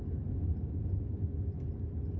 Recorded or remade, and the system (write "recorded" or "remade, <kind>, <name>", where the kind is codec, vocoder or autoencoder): recorded